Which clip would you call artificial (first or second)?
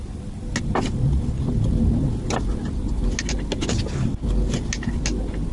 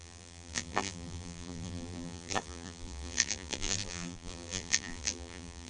second